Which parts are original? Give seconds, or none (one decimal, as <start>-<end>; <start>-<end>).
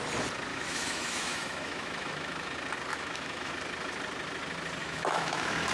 0.0-0.5; 2.5-2.9; 3.5-4.8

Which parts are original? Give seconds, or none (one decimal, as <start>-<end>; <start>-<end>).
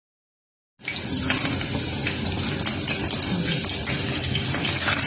0.0-5.1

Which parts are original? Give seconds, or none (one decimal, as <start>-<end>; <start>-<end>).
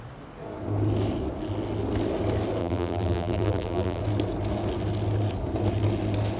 0.0-2.6; 4.0-6.4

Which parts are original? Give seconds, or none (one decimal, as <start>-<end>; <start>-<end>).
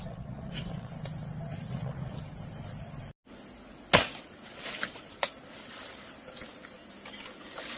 0.9-1.7; 2.2-7.8